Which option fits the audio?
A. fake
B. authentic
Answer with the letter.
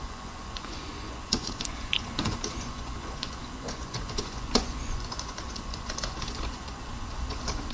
A